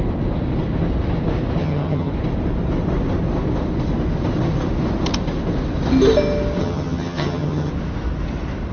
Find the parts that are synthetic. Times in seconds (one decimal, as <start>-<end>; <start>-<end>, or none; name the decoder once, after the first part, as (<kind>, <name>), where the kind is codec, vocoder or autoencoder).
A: 1.6-2.1 (vocoder, HiFi-GAN); 6.6-7.7